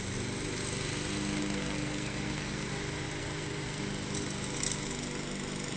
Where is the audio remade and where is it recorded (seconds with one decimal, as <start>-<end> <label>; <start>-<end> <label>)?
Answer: 0.0-1.4 recorded; 1.4-2.7 remade; 2.7-3.2 recorded; 3.2-3.8 remade; 3.8-5.8 recorded